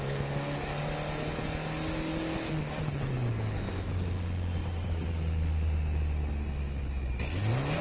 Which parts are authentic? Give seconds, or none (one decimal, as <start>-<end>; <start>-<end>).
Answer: 0.0-4.6; 5.1-7.8